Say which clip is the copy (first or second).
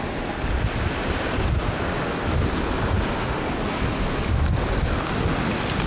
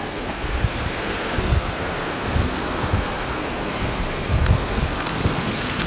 second